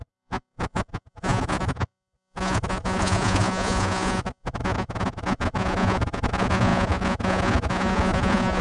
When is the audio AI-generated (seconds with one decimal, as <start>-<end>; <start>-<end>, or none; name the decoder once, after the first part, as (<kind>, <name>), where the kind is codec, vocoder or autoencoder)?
0.0-8.6 (vocoder, Vocos)